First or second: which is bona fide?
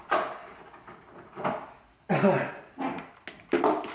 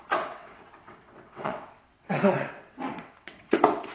first